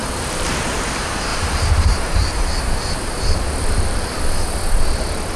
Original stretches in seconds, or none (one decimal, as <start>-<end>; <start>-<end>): 0.9-1.3; 4.2-5.4